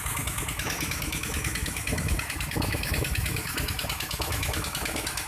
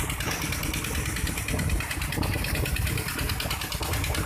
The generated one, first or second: first